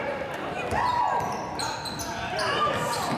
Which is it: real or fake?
real